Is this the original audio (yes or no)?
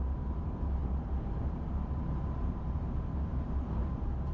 no